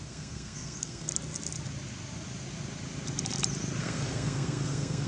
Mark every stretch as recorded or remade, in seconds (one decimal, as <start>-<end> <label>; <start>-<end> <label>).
0.0-1.1 remade; 1.1-3.8 recorded; 3.8-5.1 remade